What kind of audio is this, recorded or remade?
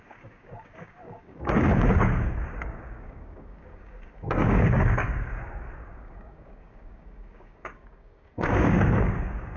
remade